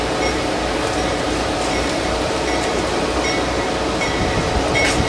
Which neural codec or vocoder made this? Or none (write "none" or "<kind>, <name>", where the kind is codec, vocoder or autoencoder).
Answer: vocoder, BigVGAN v2